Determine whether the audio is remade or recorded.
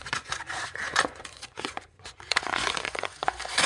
remade